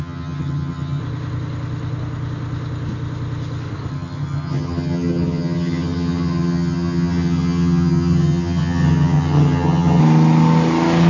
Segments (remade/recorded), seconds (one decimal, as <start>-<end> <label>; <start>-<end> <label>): 0.0-1.0 remade; 1.0-3.9 recorded; 3.9-10.0 remade; 10.0-11.1 recorded